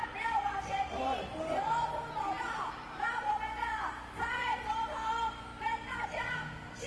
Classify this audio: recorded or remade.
recorded